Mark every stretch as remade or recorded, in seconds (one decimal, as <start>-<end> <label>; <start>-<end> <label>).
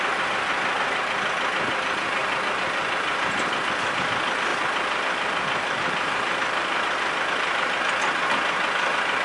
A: 0.0-9.2 recorded